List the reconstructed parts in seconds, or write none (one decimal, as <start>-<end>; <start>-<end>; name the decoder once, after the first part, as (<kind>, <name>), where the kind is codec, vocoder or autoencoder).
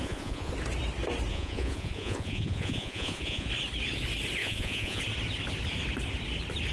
0.0-0.5 (vocoder, Vocos); 1.3-3.5; 4.4-5.0